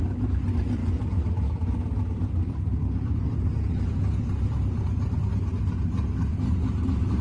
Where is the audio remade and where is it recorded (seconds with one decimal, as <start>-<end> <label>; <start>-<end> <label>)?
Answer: 0.0-0.8 recorded; 0.8-5.1 remade; 5.1-6.3 recorded; 6.3-7.2 remade